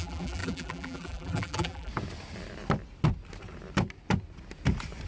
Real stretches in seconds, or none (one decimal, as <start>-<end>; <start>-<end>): 1.9-5.1